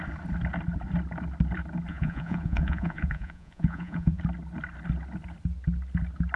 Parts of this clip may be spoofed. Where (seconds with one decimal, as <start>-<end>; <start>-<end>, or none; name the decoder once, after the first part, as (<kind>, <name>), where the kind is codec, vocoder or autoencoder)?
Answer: 1.9-4.2 (vocoder, Vocos)